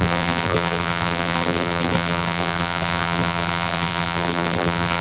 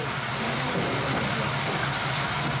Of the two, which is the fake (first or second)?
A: first